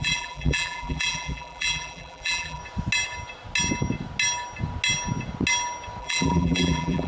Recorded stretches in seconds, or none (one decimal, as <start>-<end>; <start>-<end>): 2.6-6.0